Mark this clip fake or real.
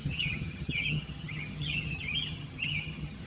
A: fake